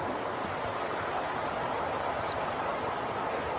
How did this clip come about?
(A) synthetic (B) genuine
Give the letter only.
B